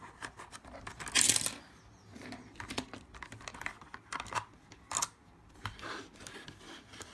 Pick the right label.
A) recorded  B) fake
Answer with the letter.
A